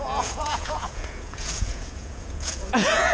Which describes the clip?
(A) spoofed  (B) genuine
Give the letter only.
A